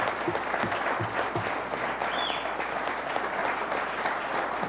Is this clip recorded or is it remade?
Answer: recorded